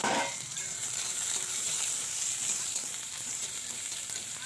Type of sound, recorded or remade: remade